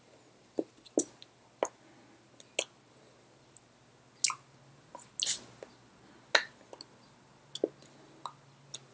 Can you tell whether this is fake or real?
real